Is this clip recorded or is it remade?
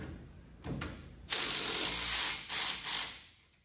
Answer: recorded